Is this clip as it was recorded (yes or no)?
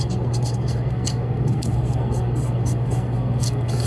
no